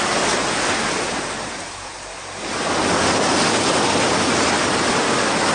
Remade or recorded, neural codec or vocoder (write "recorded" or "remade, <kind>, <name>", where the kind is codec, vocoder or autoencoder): recorded